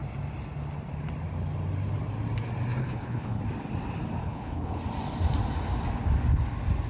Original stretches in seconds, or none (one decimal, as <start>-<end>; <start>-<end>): 0.0-2.8; 3.4-4.2; 4.8-6.9